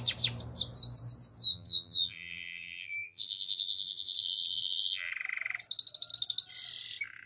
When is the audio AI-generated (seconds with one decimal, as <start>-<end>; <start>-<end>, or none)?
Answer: 1.5-5.1